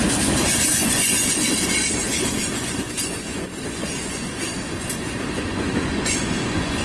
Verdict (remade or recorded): remade